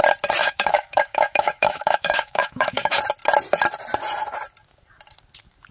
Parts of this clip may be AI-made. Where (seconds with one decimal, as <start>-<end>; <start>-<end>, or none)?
0.4-3.0